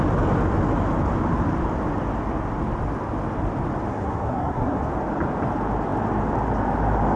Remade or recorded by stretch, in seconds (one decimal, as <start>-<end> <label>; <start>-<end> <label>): 0.0-3.9 recorded; 3.9-4.8 remade; 4.8-7.2 recorded